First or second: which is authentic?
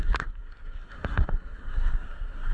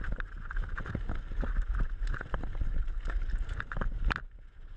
second